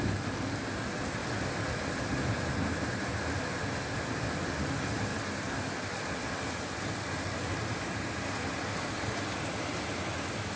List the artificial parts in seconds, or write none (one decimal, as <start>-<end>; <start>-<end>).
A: 1.2-4.0; 5.1-8.1